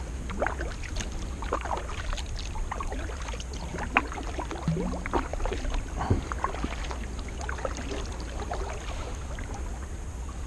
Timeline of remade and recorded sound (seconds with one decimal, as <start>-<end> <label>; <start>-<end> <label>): 0.0-10.5 recorded